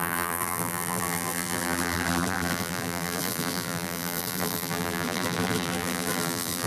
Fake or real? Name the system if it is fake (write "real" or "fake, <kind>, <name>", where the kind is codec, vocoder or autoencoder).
fake, vocoder, BigVGAN v2